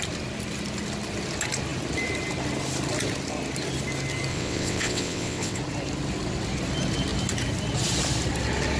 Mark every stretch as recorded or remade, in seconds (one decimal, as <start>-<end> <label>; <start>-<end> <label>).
0.0-4.3 recorded; 4.3-5.6 remade; 5.6-8.8 recorded